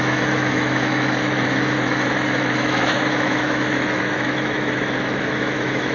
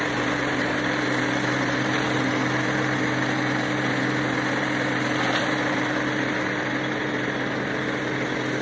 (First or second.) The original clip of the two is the second